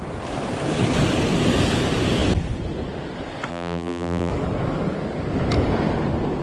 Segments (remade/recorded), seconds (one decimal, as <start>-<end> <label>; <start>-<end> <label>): 0.0-3.5 recorded; 3.5-4.3 remade; 4.3-6.4 recorded